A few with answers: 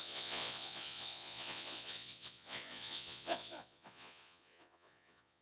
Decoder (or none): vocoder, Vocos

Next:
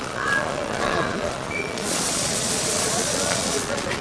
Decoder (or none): vocoder, Vocos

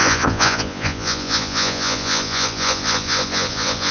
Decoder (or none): vocoder, Vocos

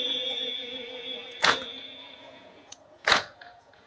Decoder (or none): vocoder, Vocos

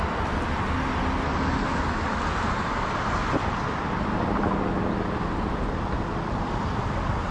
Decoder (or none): none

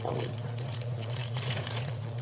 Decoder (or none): vocoder, Vocos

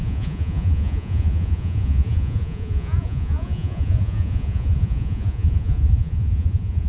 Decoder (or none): vocoder, Vocos